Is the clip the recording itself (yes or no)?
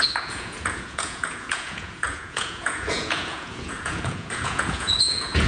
no